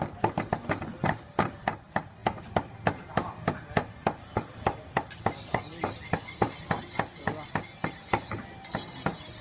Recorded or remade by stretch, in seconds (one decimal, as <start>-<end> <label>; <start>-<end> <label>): 0.0-7.8 recorded; 7.8-8.7 remade; 8.7-9.4 recorded